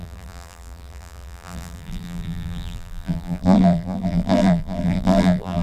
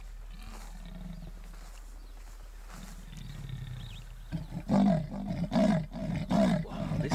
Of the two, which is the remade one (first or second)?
first